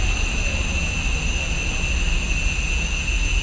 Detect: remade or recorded recorded